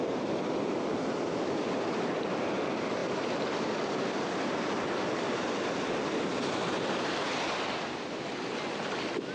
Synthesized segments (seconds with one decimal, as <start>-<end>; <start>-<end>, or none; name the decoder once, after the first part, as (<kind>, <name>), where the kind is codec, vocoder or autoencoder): 3.0-6.2 (vocoder, BigVGAN v2)